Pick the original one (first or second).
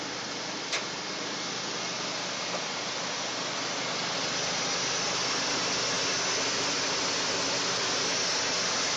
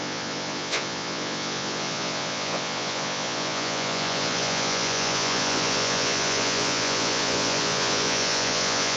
first